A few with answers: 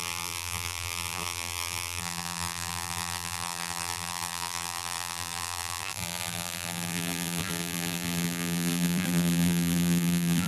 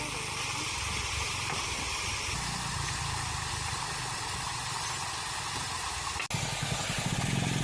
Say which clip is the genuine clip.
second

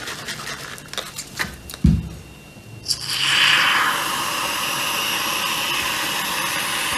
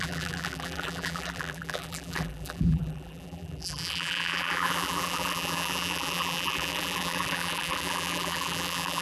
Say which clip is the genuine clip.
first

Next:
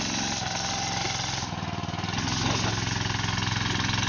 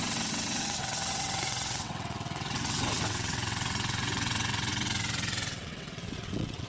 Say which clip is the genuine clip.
first